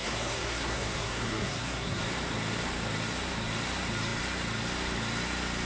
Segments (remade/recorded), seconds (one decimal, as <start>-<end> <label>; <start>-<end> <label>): 0.0-2.0 remade; 2.0-5.7 recorded